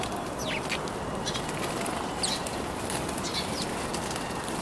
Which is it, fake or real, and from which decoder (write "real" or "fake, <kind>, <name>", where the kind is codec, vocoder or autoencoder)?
real